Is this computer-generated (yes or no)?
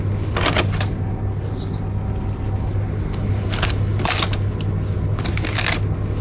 no